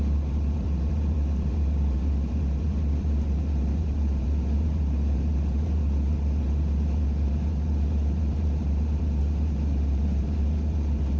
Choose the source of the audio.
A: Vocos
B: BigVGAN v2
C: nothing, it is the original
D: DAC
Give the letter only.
B